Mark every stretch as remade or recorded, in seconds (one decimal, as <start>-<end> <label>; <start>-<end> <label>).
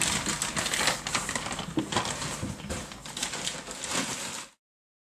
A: 0.0-5.1 recorded